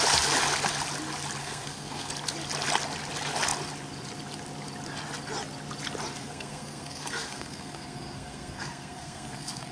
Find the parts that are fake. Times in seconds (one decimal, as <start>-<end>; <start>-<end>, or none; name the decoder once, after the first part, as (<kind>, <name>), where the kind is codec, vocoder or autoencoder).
1.4-2.1 (codec, SNAC); 6.2-9.7